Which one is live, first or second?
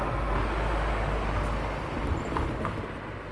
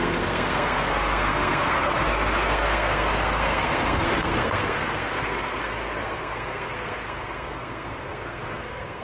first